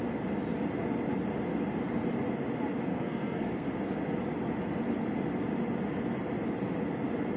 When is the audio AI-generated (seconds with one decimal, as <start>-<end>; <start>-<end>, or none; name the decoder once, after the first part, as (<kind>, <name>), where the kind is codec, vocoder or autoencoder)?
2.9-3.7 (codec, SNAC)